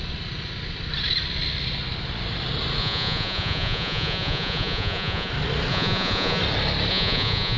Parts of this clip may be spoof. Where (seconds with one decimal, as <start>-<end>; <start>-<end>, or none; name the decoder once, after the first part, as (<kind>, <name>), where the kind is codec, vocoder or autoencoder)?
2.8-5.3 (vocoder, Vocos); 5.7-6.4; 6.9-7.6